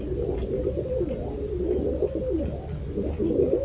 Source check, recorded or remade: recorded